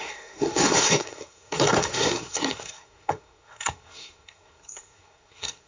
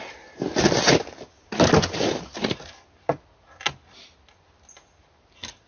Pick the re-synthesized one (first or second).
first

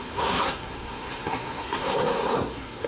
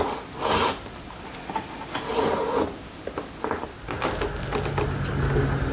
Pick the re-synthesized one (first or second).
first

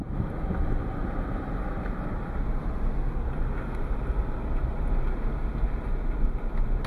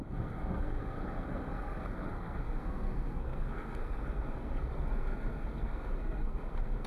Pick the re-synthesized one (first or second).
second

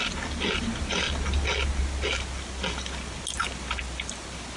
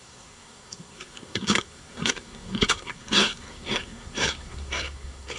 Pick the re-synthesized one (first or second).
second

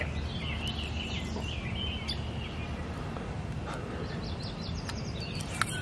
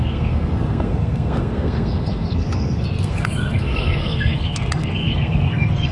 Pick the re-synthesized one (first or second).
second